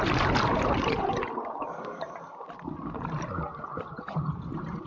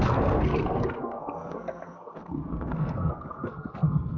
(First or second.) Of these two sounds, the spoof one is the second